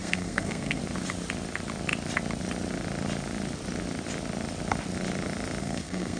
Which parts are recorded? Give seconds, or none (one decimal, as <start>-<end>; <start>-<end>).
0.8-5.6